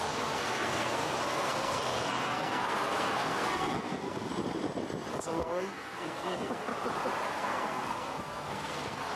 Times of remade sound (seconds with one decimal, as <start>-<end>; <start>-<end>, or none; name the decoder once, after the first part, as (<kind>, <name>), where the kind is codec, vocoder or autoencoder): 0.0-4.3 (codec, SNAC); 5.1-6.7; 7.3-9.2